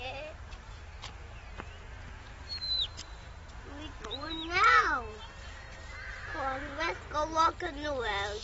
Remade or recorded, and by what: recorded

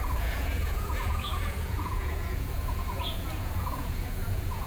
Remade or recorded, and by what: remade, vocoder, Vocos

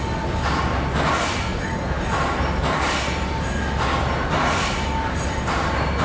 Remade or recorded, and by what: recorded